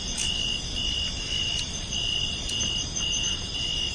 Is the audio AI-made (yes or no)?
no